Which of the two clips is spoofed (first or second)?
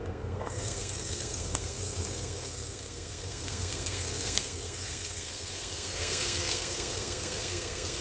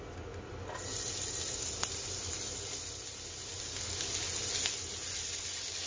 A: first